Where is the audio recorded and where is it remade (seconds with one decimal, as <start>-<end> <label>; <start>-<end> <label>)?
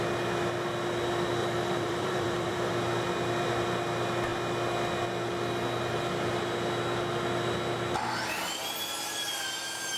0.0-1.4 recorded; 1.4-2.7 remade; 2.7-10.0 recorded